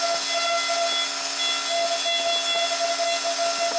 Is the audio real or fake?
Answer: real